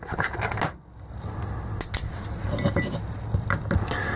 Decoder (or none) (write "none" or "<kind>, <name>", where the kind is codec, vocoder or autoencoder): none